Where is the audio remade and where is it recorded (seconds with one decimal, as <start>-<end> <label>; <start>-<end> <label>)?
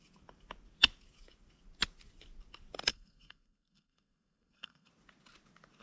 0.0-2.9 recorded; 2.9-4.9 remade; 4.9-5.8 recorded